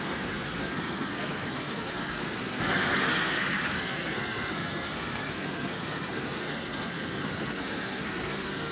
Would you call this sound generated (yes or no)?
yes